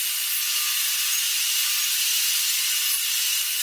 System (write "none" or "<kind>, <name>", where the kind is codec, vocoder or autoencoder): none